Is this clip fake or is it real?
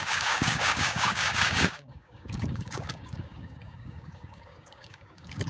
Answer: fake